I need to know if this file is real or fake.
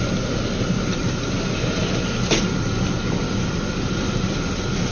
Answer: real